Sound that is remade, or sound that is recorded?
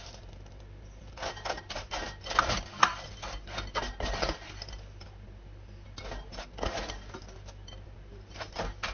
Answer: recorded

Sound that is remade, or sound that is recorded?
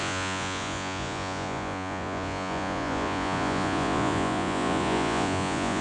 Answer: remade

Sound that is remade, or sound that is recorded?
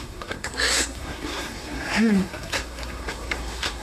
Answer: remade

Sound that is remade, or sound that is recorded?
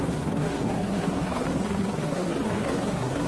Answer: remade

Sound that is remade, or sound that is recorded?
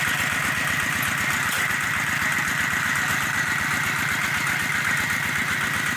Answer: recorded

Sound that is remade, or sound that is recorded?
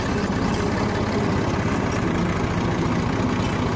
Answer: recorded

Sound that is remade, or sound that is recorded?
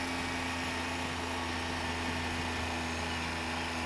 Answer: recorded